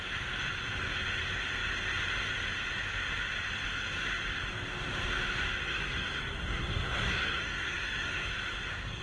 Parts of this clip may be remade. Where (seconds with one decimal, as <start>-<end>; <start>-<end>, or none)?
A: 5.6-8.3